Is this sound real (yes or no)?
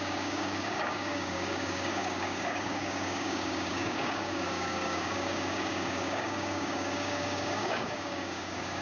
no